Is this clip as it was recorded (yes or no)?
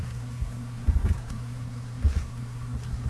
no